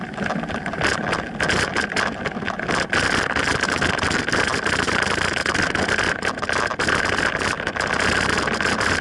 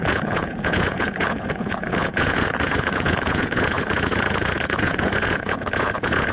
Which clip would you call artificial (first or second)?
second